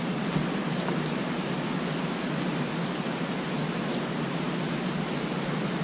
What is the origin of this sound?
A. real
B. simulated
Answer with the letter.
A